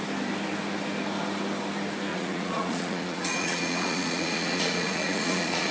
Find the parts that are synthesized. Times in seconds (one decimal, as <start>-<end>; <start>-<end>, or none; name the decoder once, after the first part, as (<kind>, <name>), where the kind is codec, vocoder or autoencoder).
2.1-5.7 (vocoder, Vocos)